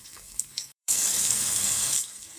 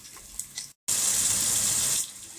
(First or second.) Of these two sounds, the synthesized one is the first